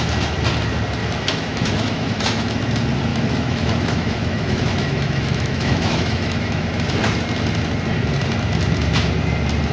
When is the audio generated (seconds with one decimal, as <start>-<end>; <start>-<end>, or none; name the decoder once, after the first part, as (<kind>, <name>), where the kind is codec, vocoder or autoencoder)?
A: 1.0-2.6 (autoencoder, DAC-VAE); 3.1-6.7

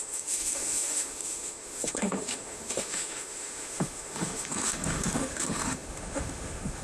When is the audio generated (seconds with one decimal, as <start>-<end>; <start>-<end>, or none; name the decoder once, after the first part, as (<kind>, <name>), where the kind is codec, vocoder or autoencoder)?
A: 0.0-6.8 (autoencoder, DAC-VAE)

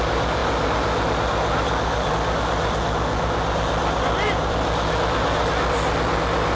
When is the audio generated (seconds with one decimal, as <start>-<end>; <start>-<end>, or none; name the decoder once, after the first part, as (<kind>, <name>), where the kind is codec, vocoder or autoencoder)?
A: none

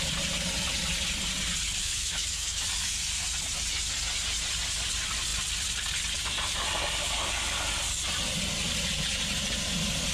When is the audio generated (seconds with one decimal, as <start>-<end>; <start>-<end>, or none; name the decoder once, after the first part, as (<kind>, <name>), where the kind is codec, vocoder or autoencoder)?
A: 1.8-2.6 (autoencoder, DAC-VAE)

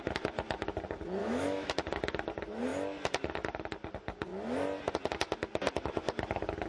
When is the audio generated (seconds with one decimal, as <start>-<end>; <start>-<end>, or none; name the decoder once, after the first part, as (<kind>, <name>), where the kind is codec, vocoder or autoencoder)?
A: 1.2-1.7 (autoencoder, DAC-VAE)

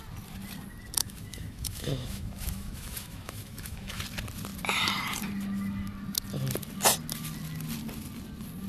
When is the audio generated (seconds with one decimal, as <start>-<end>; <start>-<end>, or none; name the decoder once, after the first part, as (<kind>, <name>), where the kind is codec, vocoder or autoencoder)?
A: 1.0-4.0 (autoencoder, DAC-VAE)